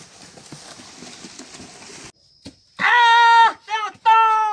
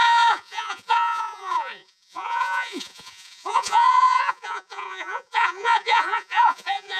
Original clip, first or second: first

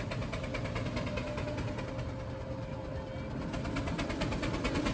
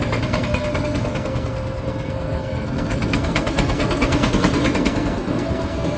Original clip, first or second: first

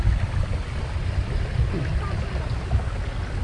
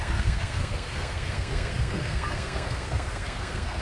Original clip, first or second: first